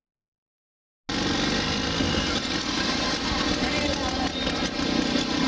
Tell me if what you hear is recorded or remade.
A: recorded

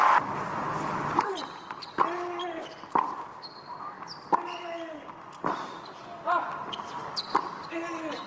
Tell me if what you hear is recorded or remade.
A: recorded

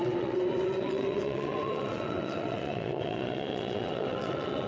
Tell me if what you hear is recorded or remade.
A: remade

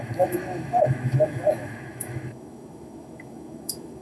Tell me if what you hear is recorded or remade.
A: remade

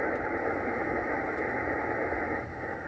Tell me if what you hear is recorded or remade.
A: remade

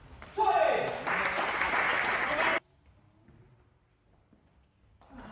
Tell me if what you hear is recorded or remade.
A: recorded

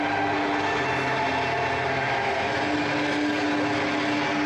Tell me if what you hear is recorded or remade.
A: recorded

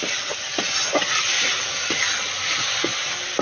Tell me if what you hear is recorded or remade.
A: recorded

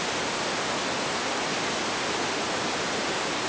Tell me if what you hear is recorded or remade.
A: recorded